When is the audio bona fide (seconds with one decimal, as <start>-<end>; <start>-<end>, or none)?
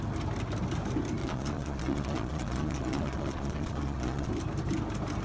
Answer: 0.0-1.2; 4.3-5.2